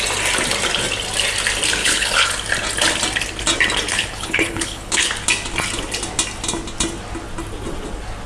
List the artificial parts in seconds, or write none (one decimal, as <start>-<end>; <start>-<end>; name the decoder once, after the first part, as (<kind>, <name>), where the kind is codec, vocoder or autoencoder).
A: 1.8-2.3 (codec, HILCodec); 3.9-5.1